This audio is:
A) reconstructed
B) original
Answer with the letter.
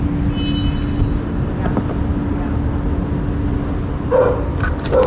B